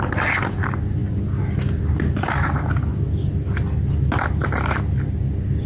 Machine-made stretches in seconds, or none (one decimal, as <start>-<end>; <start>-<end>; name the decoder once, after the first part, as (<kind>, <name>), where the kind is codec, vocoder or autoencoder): none